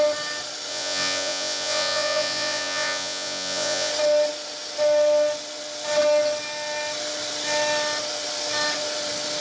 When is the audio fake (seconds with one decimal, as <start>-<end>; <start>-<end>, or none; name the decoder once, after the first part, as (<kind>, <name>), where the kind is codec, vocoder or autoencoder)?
0.7-3.9 (vocoder, Vocos)